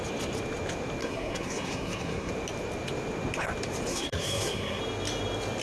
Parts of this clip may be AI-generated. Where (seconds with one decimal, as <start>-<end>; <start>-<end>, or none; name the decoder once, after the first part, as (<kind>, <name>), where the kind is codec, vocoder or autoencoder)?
1.0-2.3 (codec, SNAC); 3.9-4.8